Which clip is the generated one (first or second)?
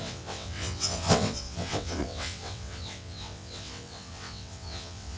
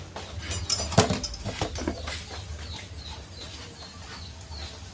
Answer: first